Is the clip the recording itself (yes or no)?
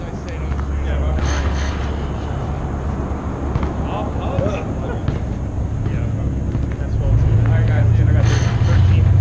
yes